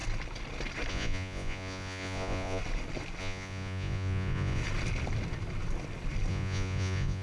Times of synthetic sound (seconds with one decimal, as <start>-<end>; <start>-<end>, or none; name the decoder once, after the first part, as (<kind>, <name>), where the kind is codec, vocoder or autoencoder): 0.9-2.6 (vocoder, Vocos); 3.2-4.6; 6.3-7.2